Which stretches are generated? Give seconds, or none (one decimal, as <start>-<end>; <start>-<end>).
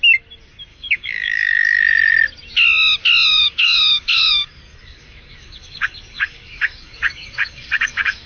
0.7-1.8; 3.3-8.3